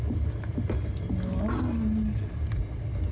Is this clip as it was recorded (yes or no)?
yes